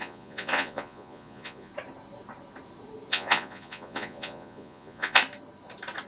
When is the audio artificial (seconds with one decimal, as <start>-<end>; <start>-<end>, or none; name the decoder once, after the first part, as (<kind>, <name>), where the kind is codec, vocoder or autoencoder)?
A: 0.0-1.7 (vocoder, Vocos); 3.1-5.2